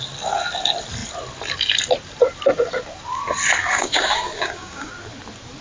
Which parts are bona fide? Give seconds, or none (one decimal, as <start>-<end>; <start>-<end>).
0.0-3.6; 4.9-5.6